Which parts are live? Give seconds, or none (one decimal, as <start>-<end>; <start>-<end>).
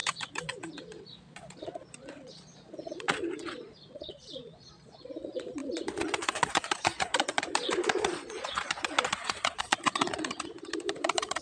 none